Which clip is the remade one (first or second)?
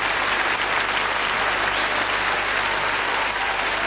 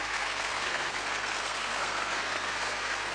second